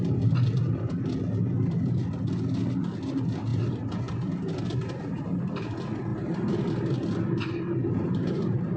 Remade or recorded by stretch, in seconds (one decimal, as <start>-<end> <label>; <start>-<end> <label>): 0.0-3.5 recorded; 3.5-4.4 remade; 4.4-6.1 recorded; 6.1-6.7 remade; 6.7-7.8 recorded; 7.8-8.8 remade